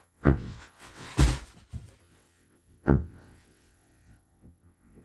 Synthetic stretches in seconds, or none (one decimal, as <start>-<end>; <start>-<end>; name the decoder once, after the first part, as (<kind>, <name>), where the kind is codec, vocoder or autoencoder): 0.0-1.1 (vocoder, WaveNeXt); 2.0-5.0